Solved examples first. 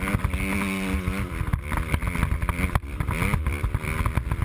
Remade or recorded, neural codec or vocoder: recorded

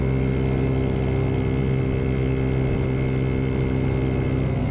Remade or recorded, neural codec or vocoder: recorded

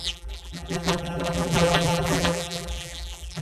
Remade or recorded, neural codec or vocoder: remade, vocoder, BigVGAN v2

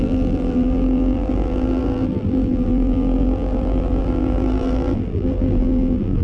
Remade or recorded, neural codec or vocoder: remade, vocoder, BigVGAN v2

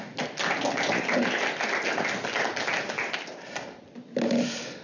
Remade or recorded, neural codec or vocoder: recorded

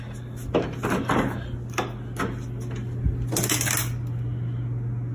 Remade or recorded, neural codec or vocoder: recorded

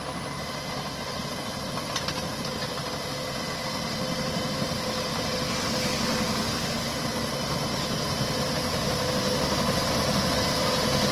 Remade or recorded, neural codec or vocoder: recorded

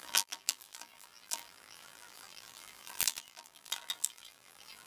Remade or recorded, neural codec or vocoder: remade, vocoder, BigVGAN v2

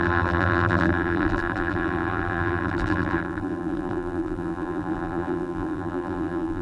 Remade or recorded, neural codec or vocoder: remade, vocoder, BigVGAN v2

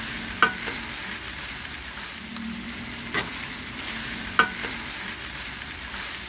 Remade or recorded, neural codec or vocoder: remade, vocoder, BigVGAN v2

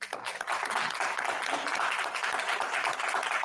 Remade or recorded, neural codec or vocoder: recorded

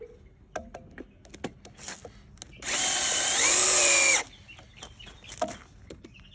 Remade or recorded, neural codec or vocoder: recorded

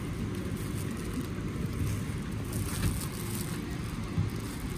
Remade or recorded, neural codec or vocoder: recorded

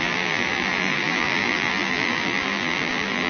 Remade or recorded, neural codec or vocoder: remade, vocoder, BigVGAN v2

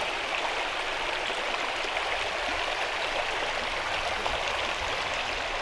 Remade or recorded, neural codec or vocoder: recorded